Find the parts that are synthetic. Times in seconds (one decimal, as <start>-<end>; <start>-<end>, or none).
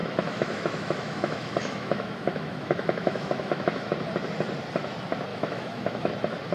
0.0-3.9; 5.3-6.1